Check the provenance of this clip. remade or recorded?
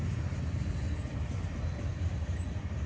recorded